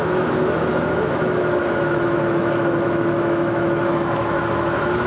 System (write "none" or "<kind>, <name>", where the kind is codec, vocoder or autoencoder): autoencoder, DAC-VAE